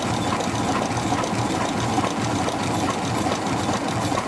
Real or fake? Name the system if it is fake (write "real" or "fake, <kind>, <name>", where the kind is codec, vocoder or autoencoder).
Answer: real